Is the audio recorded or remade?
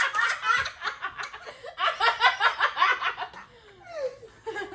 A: recorded